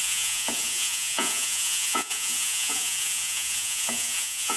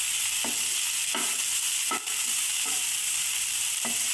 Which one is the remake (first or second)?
first